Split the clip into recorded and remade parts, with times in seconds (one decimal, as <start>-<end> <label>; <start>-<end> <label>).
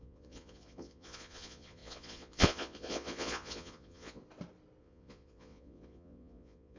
0.0-4.2 remade; 4.2-4.8 recorded; 4.8-6.8 remade